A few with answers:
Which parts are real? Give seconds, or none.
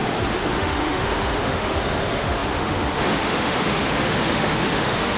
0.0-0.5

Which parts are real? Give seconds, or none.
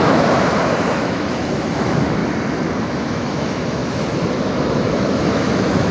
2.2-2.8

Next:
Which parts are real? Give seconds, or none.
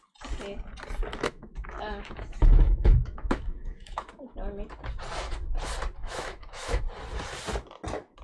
0.0-1.1; 4.1-6.0; 6.8-8.2